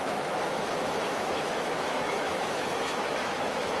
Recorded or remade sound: remade